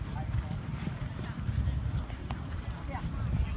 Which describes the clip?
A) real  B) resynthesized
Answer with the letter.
A